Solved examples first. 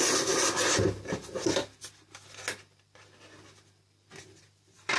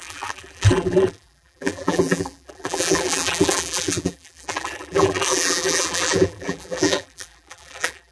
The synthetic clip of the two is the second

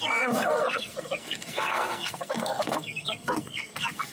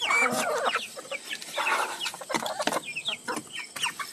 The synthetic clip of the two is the first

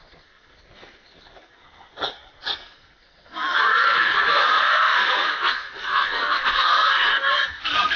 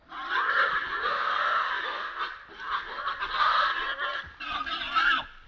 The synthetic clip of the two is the first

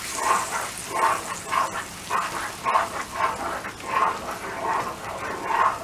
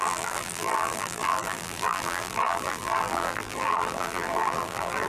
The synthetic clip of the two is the second